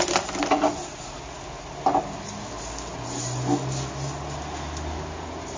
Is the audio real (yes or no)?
yes